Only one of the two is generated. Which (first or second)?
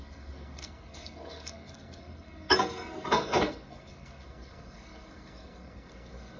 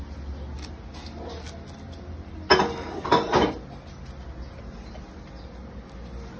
first